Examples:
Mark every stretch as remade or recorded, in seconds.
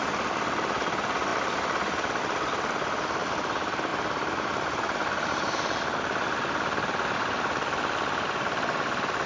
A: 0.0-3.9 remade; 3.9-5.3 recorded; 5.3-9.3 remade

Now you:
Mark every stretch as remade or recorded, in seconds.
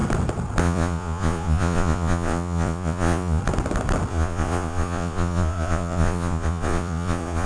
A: 0.0-0.6 recorded; 0.6-3.4 remade; 3.4-4.1 recorded; 4.1-7.5 remade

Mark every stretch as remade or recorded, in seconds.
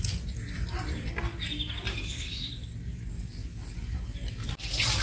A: 0.0-1.9 recorded; 1.9-2.5 remade; 2.5-5.0 recorded